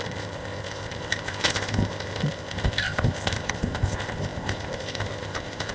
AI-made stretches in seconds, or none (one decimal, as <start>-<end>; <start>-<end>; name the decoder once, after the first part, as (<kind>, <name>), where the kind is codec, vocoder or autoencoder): 0.0-5.7 (codec, ZipCodec)